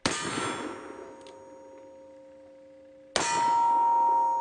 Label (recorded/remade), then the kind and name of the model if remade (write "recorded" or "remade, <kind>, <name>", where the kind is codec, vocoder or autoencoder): recorded